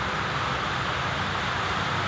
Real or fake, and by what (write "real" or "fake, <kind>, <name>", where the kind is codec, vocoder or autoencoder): real